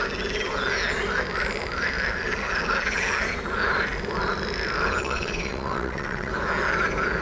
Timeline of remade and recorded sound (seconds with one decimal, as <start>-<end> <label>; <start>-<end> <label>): 0.0-5.0 recorded; 5.0-6.3 remade; 6.3-7.2 recorded